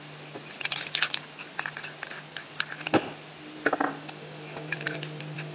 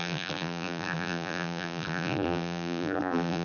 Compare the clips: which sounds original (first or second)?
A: first